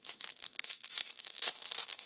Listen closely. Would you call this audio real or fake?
fake